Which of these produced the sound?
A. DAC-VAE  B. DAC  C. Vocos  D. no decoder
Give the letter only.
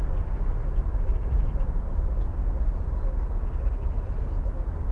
D